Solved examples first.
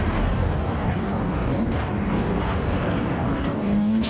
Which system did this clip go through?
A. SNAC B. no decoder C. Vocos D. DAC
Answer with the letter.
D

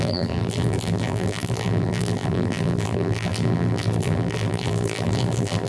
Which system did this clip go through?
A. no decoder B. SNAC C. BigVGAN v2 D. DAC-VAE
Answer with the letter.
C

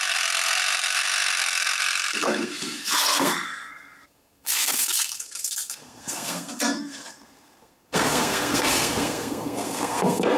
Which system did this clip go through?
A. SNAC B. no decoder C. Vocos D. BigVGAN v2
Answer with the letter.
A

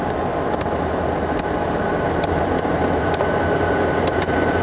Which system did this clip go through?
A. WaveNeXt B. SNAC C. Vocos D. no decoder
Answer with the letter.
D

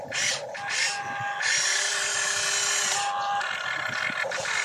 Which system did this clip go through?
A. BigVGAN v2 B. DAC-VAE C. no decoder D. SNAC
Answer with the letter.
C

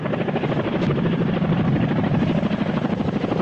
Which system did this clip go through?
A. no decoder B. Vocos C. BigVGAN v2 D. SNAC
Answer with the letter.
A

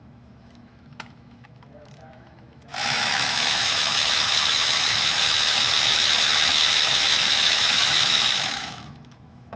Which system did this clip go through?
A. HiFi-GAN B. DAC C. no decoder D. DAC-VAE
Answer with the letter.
D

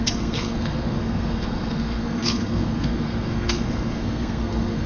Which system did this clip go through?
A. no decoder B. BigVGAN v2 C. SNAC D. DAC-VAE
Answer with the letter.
C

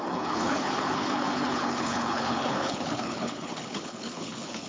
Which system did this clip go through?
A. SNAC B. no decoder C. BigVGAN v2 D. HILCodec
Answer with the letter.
D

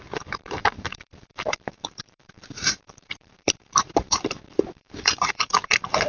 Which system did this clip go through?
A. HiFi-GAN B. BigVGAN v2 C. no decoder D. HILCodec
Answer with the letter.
B